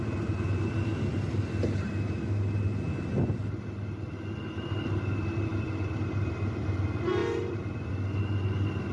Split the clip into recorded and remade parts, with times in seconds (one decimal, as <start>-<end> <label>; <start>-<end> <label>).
0.0-8.9 recorded